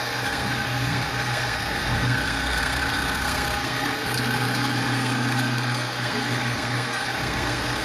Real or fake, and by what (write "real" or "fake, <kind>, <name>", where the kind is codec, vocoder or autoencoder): fake, codec, SNAC